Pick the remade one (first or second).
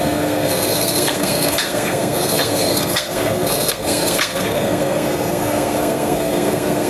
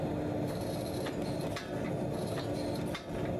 first